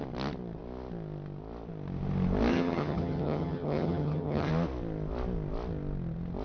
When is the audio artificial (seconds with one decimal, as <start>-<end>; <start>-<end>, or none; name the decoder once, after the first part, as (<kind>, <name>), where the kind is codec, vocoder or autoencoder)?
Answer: 2.5-4.5 (vocoder, HiFi-GAN)